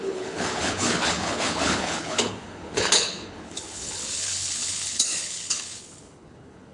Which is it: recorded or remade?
remade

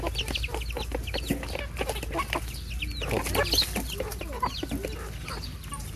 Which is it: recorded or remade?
recorded